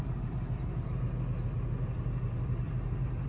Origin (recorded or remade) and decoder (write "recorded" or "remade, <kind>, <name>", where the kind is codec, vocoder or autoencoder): remade, vocoder, BigVGAN v2